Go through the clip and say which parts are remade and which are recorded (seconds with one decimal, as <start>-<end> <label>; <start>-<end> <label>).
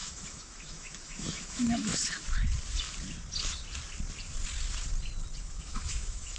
0.0-1.9 remade; 1.9-5.4 recorded; 5.4-6.4 remade